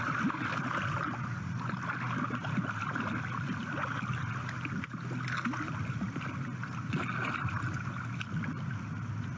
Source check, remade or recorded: recorded